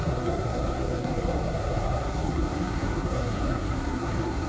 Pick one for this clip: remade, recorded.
remade